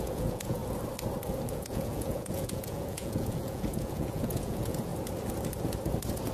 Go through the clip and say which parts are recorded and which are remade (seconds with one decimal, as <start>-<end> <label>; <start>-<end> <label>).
0.0-0.6 remade; 0.6-1.5 recorded; 1.5-4.9 remade; 4.9-6.3 recorded